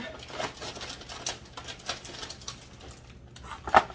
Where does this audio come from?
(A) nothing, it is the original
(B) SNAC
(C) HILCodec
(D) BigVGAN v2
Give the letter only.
A